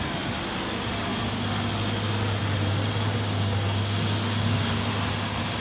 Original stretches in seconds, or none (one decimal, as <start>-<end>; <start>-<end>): 0.0-3.1; 4.9-5.6

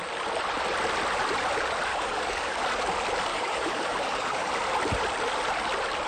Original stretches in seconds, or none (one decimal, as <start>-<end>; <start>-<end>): 0.0-1.9; 2.6-3.3; 4.5-6.1

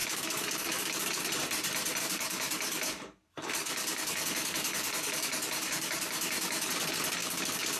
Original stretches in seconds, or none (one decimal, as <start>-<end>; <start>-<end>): 1.2-2.0; 6.7-7.2

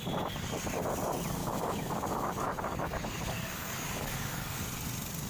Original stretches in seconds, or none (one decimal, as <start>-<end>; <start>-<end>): 0.0-1.4; 4.6-5.3

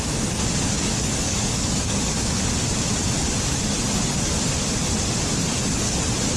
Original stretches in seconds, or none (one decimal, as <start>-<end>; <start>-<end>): 0.0-0.7; 2.4-5.4; 6.0-6.4

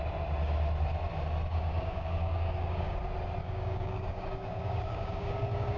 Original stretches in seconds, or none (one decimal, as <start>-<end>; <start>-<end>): 0.0-1.5; 3.0-3.4

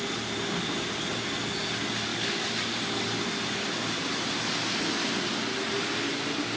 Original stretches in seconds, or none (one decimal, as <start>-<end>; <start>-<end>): 0.0-2.1; 2.8-6.6

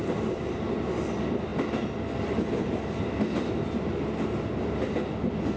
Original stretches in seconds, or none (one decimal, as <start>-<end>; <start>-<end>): 0.0-5.6